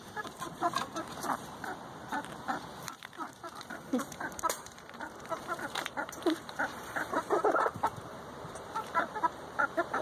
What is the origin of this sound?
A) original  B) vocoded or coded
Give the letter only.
B